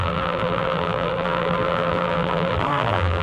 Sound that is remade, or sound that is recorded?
remade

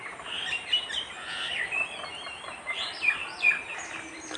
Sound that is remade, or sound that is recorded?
recorded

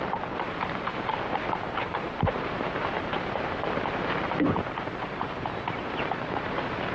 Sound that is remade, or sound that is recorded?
remade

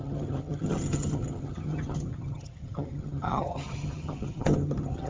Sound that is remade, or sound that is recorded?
remade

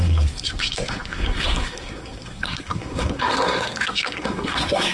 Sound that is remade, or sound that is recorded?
remade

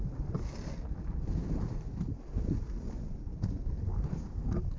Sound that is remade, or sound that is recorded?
recorded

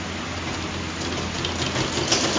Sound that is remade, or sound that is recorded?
recorded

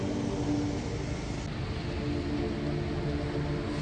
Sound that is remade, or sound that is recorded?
recorded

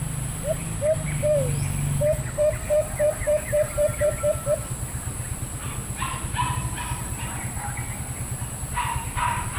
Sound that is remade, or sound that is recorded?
recorded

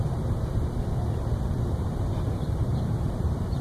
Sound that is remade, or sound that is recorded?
remade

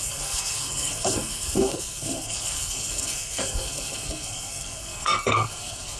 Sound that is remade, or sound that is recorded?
remade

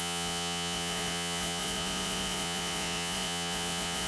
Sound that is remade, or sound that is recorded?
remade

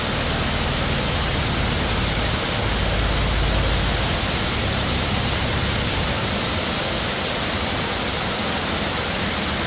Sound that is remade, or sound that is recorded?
recorded